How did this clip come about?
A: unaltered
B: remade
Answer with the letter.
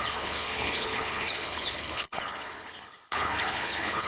B